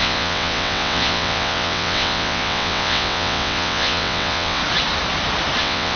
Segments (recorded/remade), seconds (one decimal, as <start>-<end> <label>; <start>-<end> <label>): 0.0-4.6 remade; 4.6-5.6 recorded; 5.6-6.0 remade